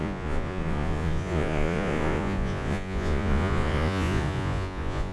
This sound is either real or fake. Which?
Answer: fake